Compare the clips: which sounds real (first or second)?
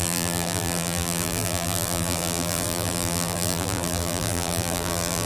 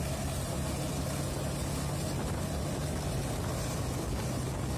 second